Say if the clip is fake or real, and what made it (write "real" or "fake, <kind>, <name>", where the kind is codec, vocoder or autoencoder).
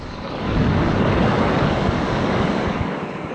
fake, codec, DAC